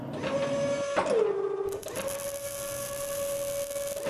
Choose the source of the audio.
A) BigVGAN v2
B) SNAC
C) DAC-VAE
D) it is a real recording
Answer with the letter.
D